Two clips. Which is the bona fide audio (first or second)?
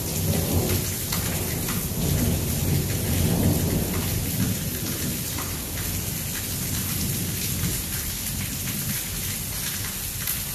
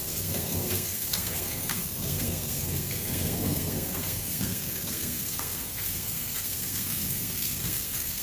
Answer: first